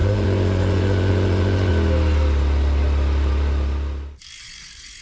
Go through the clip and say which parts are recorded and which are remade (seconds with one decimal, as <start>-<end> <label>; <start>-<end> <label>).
0.0-1.7 remade; 1.7-4.4 recorded; 4.4-5.0 remade